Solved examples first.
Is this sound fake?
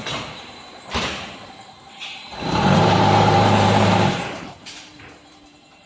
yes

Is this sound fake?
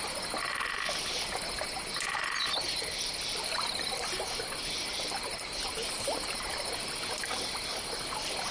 no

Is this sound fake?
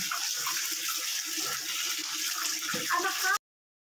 no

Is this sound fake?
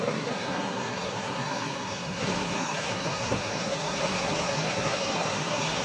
yes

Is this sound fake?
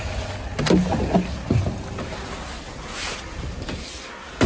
no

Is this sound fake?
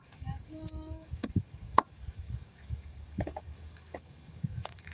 yes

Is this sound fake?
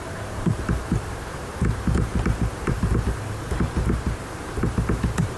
yes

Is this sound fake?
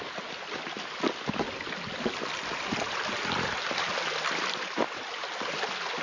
no